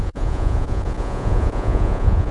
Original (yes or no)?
no